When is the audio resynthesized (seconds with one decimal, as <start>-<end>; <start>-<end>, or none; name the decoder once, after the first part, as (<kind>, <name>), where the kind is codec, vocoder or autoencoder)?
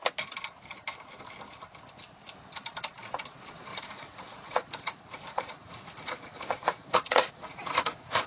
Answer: 3.7-8.3 (vocoder, Vocos)